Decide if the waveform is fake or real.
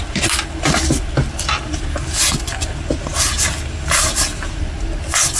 real